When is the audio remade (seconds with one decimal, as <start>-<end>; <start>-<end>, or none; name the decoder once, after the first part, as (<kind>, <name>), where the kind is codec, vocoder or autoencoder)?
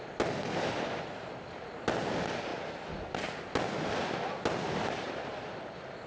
none